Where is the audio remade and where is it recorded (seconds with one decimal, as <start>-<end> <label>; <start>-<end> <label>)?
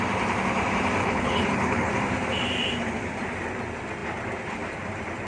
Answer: 0.0-1.0 recorded; 1.0-1.9 remade; 1.9-5.3 recorded